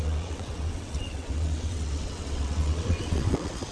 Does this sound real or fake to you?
fake